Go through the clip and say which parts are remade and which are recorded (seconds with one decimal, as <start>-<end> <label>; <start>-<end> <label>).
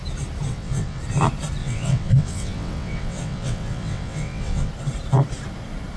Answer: 0.0-0.5 recorded; 0.5-1.0 remade; 1.0-1.6 recorded; 1.6-4.7 remade; 4.7-6.0 recorded